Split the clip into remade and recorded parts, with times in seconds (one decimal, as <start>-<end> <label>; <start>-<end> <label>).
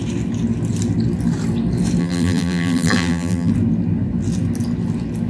0.0-2.0 recorded; 2.0-3.5 remade; 3.5-5.3 recorded